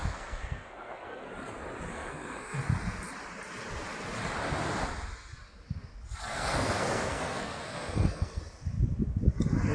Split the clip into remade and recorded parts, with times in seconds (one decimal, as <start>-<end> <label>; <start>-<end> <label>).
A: 0.0-1.3 remade; 1.3-1.9 recorded; 1.9-2.6 remade; 2.6-6.2 recorded; 6.2-8.4 remade; 8.4-9.7 recorded